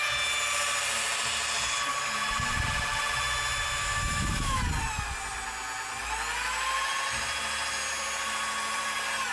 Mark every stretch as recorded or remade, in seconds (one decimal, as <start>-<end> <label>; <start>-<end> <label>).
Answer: 0.0-3.8 recorded; 3.8-4.6 remade; 4.6-9.3 recorded

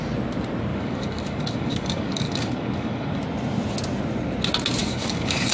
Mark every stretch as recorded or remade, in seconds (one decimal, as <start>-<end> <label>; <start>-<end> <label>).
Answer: 0.0-0.7 recorded; 0.7-3.2 remade; 3.2-4.8 recorded; 4.8-5.5 remade

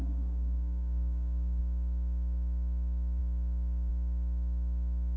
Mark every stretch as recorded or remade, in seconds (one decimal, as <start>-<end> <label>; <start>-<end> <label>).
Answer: 0.0-1.6 remade; 1.6-5.2 recorded

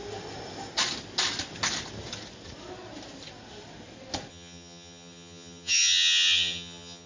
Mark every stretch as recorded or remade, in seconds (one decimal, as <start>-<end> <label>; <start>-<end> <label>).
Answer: 0.0-4.3 recorded; 4.3-7.1 remade